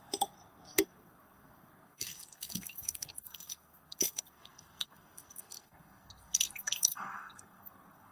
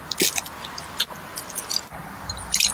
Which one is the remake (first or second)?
first